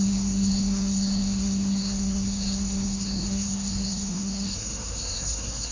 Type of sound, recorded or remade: remade